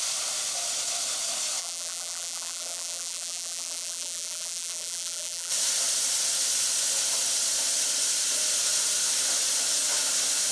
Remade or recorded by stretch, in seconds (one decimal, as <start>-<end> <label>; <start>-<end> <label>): 0.0-1.6 recorded; 1.6-5.5 remade; 5.5-10.5 recorded